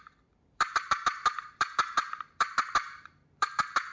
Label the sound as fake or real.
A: fake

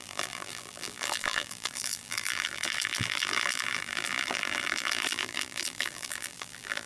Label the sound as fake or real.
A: fake